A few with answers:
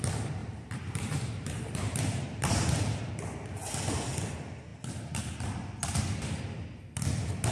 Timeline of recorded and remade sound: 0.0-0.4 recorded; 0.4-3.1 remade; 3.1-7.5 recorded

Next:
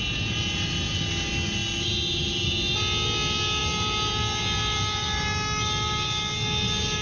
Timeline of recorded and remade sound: 0.0-7.0 recorded

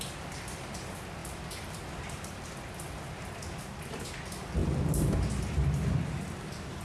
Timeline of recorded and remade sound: 0.0-1.2 recorded; 1.2-3.8 remade; 3.8-6.8 recorded

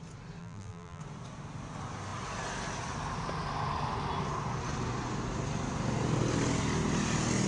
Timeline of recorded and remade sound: 0.0-0.4 recorded; 0.4-1.0 remade; 1.0-7.5 recorded

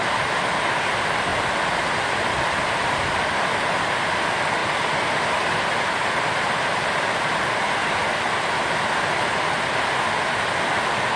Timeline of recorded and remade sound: 0.0-11.2 recorded

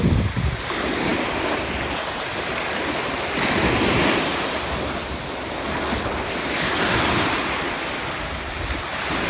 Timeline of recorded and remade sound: 0.0-9.3 recorded

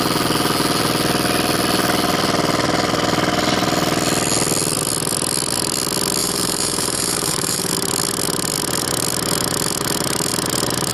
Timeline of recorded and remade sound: 0.0-6.2 recorded; 6.2-7.7 remade; 7.7-10.9 recorded

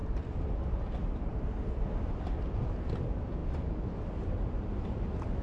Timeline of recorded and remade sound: 0.0-2.1 remade; 2.1-5.4 recorded